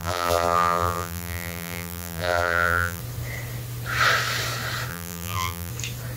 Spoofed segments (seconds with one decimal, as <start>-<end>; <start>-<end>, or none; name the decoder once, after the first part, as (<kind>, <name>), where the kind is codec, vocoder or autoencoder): 0.0-3.0 (vocoder, BigVGAN v2); 4.9-5.7